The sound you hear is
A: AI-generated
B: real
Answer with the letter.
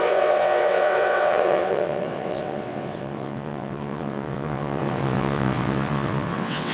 A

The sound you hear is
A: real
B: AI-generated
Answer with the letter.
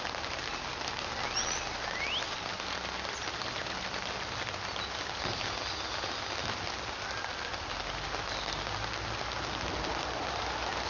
A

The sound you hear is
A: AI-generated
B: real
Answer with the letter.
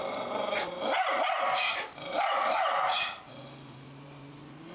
B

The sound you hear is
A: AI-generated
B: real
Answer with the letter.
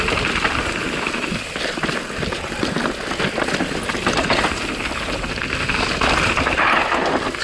B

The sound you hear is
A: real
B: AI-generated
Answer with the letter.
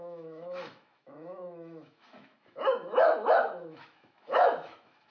B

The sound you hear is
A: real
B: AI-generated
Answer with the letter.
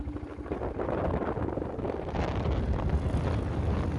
A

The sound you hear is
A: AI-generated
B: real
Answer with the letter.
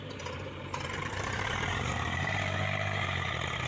A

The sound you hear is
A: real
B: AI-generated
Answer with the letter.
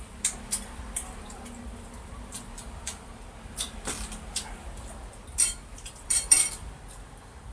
B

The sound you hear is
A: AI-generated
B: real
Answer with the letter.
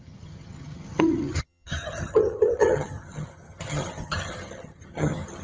A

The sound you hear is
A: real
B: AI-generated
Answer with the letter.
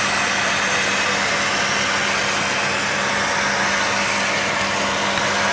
A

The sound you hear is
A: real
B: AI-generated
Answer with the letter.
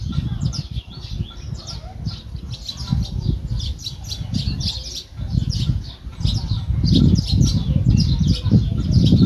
A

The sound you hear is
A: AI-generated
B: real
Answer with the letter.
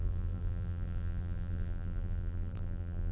A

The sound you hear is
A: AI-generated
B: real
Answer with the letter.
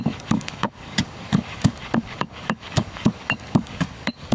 A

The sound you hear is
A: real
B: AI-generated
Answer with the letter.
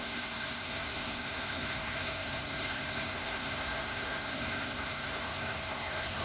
B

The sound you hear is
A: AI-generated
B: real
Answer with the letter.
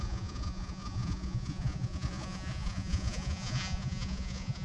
A